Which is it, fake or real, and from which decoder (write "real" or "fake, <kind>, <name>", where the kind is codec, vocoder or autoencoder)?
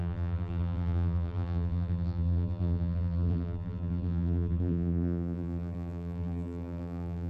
fake, vocoder, BigVGAN v2